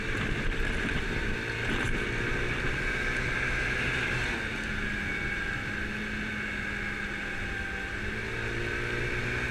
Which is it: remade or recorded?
recorded